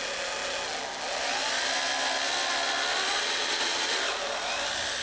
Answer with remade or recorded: recorded